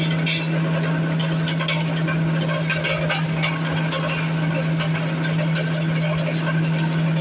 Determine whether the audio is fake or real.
real